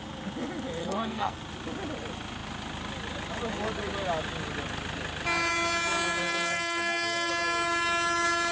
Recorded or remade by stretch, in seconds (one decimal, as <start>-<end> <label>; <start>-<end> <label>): 0.0-0.8 recorded; 0.8-1.4 remade; 1.4-6.2 recorded; 6.2-7.3 remade; 7.3-8.5 recorded